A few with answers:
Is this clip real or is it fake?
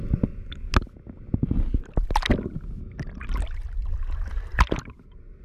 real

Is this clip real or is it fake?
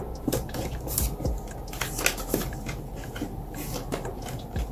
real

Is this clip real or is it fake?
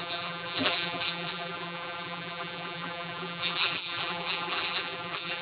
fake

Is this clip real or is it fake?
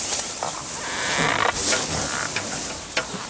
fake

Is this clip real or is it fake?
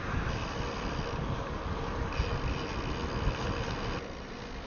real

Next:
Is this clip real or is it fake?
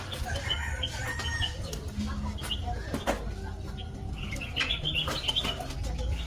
real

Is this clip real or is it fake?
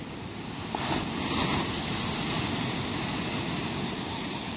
real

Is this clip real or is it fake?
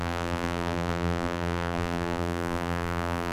fake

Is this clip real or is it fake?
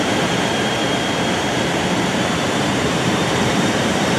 fake